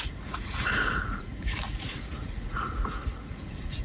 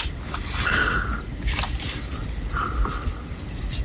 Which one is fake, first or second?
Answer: first